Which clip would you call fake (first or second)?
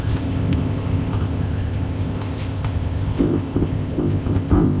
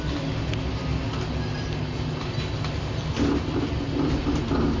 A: first